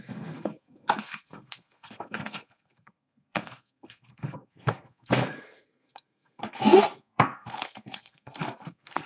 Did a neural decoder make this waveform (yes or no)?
yes